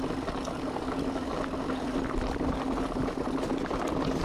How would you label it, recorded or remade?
recorded